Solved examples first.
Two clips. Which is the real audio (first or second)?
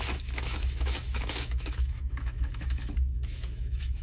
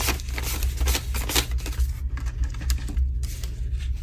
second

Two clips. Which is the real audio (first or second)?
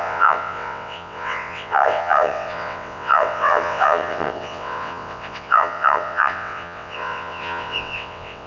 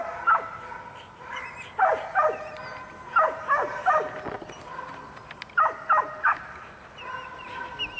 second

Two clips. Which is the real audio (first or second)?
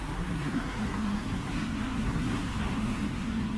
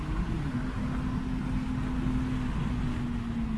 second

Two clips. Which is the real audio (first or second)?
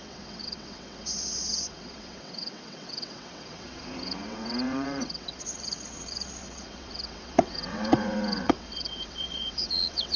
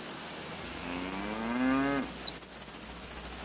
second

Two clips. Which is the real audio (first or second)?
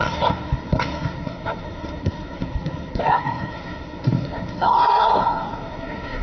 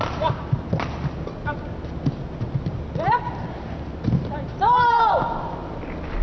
second